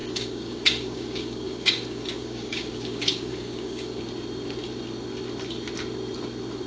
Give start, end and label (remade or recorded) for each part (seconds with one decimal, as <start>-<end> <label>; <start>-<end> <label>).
0.0-4.0 remade; 4.0-6.7 recorded